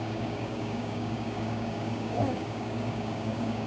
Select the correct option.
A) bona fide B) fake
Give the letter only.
B